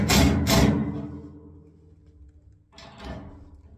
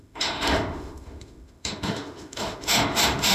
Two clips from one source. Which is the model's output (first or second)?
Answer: second